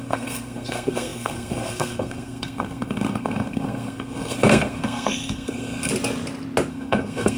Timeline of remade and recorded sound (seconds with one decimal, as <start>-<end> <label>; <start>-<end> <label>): 0.0-5.9 remade; 5.9-6.7 recorded; 6.7-7.4 remade

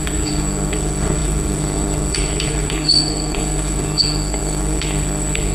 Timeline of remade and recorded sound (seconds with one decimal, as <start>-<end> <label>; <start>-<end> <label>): 0.0-5.5 remade